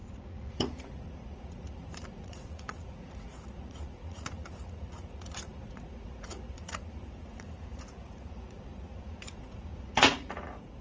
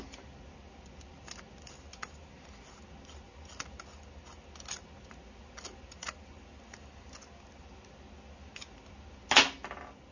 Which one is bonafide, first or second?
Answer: second